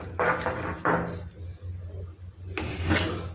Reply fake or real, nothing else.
real